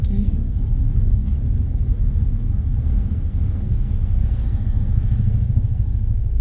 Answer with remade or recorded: remade